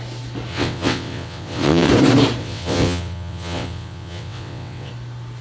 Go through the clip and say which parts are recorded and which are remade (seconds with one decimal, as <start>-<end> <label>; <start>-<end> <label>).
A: 0.0-0.5 recorded; 0.5-1.9 remade; 1.9-2.4 recorded; 2.4-4.9 remade; 4.9-5.4 recorded